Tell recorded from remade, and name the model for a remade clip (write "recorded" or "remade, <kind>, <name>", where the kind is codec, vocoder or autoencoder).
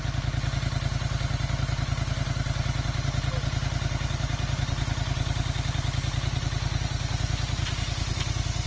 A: recorded